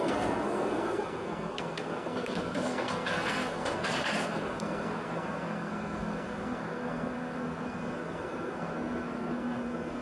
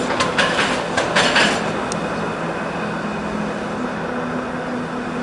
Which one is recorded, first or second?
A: second